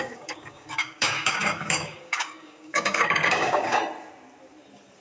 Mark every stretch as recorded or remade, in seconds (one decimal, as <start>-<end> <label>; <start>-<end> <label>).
0.0-3.8 remade; 3.8-5.0 recorded